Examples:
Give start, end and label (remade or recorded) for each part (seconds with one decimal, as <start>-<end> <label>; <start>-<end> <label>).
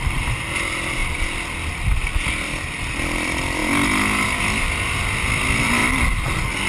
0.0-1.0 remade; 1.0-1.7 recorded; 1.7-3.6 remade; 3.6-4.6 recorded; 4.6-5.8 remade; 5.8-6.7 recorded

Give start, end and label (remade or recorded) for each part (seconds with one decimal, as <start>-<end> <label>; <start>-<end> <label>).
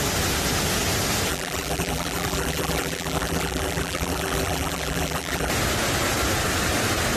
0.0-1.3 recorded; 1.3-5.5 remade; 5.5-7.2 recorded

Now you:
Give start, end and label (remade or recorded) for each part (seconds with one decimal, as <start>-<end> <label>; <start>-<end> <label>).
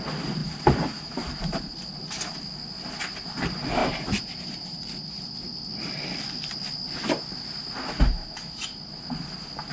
0.0-0.4 recorded; 0.4-1.7 remade; 1.7-3.8 recorded; 3.8-5.3 remade; 5.3-9.7 recorded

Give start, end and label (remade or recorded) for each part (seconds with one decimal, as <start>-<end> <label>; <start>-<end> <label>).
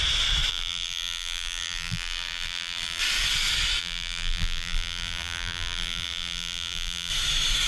0.0-0.5 recorded; 0.5-3.0 remade; 3.0-3.8 recorded; 3.8-7.1 remade; 7.1-7.7 recorded